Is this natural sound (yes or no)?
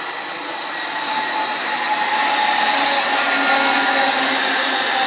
yes